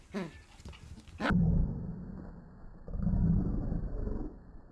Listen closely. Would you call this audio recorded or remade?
recorded